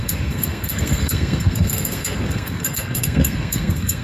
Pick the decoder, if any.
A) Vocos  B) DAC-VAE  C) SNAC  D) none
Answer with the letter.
C